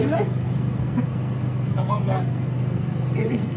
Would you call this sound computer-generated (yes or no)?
yes